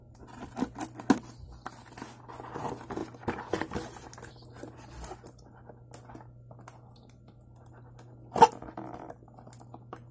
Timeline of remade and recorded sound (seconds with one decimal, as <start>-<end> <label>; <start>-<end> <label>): 0.0-10.1 recorded